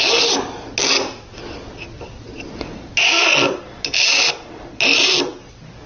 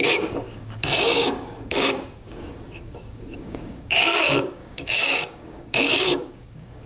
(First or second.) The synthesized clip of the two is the second